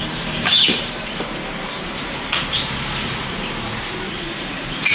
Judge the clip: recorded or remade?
remade